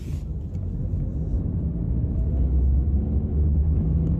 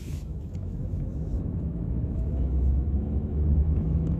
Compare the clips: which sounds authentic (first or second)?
first